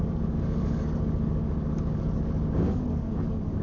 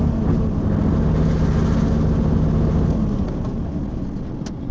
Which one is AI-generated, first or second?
first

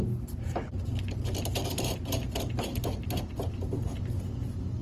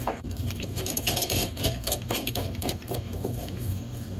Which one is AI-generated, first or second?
second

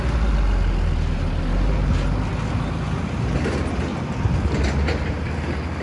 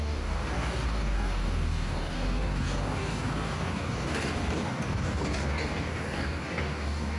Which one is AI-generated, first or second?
second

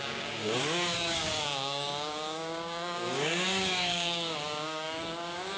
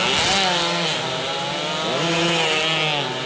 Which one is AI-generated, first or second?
first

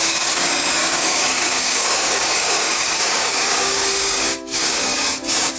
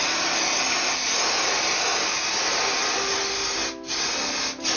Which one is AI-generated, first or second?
first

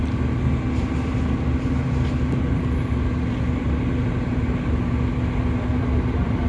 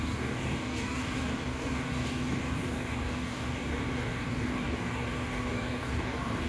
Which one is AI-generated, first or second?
second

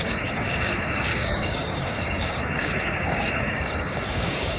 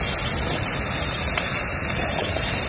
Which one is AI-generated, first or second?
first